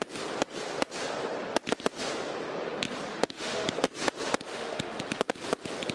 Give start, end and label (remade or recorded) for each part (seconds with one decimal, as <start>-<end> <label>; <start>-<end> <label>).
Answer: 0.0-3.1 recorded; 3.1-3.7 remade; 3.7-4.5 recorded; 4.5-5.0 remade; 5.0-5.9 recorded